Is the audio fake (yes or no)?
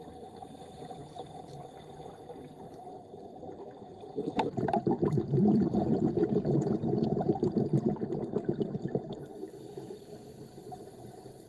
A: yes